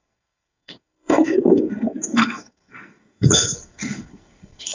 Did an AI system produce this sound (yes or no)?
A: yes